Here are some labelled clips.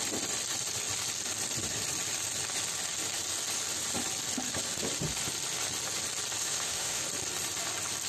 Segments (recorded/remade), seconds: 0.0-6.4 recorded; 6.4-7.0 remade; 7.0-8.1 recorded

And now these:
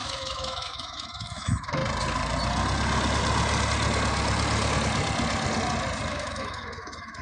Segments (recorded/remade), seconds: 0.0-1.8 remade; 1.8-6.1 recorded; 6.1-7.2 remade

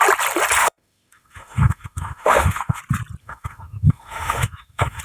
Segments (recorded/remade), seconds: 0.0-0.6 recorded; 0.6-2.8 remade; 2.8-3.2 recorded; 3.2-5.0 remade